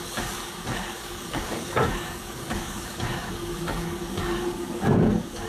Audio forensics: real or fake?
fake